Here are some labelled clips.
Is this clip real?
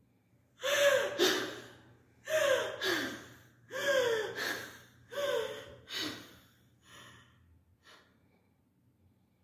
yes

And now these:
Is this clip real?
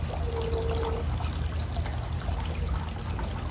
yes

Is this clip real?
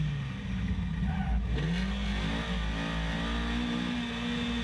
yes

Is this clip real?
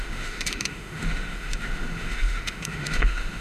no